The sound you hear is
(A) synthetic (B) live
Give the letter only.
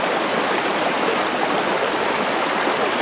B